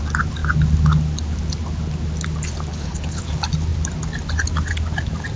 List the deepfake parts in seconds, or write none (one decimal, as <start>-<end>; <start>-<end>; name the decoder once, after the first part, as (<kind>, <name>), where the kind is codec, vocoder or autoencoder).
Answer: 2.7-3.2 (codec, HILCodec)